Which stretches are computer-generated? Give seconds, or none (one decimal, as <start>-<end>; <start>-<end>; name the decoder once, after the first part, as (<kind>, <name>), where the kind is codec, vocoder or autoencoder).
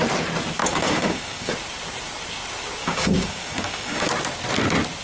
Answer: 0.6-1.5 (codec, DAC); 2.8-4.1